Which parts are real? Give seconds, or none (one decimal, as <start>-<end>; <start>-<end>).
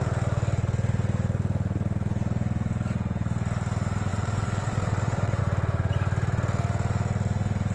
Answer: 0.0-4.1; 5.4-7.7